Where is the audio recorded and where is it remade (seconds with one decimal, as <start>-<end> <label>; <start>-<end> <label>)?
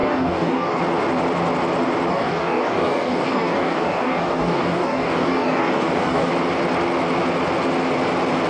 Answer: 0.0-0.8 remade; 0.8-2.1 recorded; 2.1-6.3 remade; 6.3-8.5 recorded